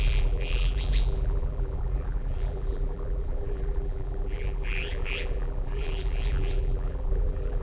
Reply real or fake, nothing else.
fake